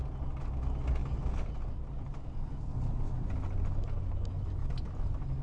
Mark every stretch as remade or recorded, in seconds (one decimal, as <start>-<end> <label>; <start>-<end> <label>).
0.0-2.7 recorded; 2.7-3.3 remade; 3.3-5.4 recorded